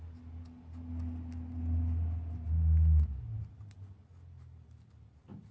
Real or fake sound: real